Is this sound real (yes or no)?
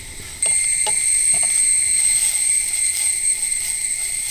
yes